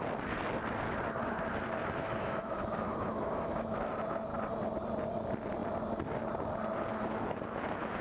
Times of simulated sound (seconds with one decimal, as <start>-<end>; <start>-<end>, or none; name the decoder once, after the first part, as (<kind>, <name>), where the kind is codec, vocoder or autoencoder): 1.8-3.8 (autoencoder, DAC-VAE); 6.9-8.0